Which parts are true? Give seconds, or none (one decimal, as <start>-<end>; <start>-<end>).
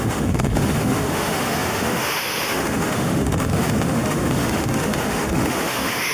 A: none